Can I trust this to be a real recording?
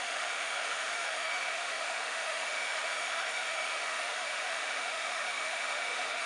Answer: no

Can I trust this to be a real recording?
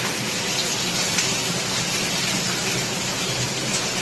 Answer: yes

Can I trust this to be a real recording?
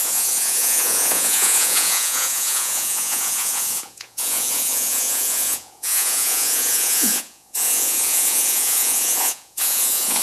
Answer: no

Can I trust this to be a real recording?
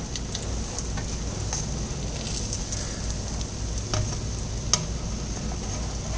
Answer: yes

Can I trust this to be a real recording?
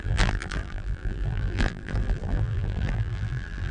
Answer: no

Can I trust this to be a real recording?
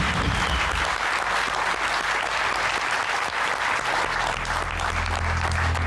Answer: yes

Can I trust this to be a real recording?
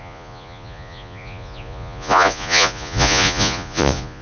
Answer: no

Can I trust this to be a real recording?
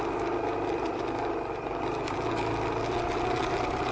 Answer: yes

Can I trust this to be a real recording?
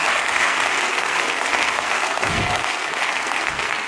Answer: no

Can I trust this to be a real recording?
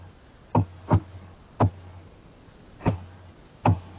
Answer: yes